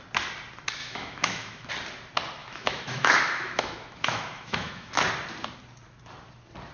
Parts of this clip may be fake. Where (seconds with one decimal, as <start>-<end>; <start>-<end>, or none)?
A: 0.8-1.7; 2.4-5.0